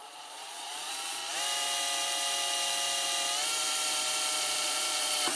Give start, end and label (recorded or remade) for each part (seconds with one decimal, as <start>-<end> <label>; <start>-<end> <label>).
0.0-1.2 remade; 1.2-4.4 recorded; 4.4-5.4 remade